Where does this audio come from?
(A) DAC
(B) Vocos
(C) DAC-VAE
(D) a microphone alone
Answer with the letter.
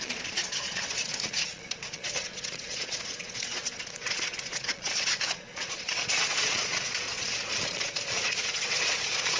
B